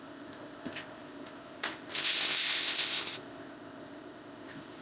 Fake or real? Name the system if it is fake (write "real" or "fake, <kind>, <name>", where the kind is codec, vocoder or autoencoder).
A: fake, codec, ZipCodec